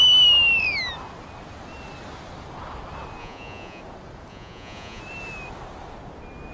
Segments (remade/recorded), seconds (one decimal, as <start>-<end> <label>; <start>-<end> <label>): 0.0-3.2 recorded; 3.2-3.8 remade; 3.8-4.3 recorded; 4.3-5.0 remade; 5.0-6.5 recorded